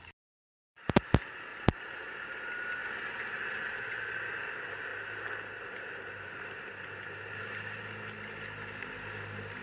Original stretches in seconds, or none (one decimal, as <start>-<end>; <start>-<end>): 0.0-1.5; 2.1-2.8; 4.0-9.6